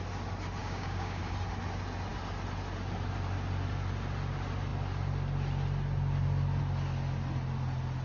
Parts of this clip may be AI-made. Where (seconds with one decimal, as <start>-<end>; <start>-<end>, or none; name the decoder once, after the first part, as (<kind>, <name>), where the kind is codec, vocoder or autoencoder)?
0.6-1.2 (codec, DAC)